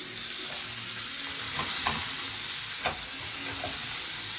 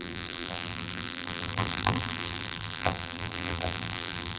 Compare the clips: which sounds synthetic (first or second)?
second